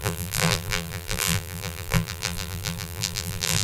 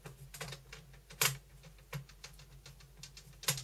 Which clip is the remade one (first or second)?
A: first